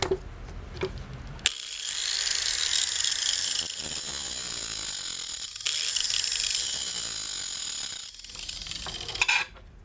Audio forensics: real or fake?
real